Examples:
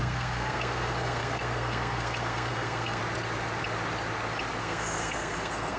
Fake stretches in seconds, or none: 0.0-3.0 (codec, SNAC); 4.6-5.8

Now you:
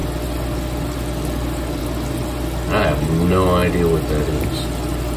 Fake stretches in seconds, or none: none

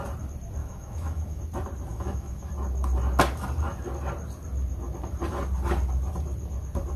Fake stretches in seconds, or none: 0.6-1.4 (autoencoder, DAC-VAE); 1.9-2.5